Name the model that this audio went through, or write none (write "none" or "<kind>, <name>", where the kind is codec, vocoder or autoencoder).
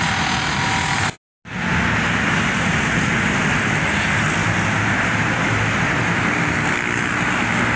none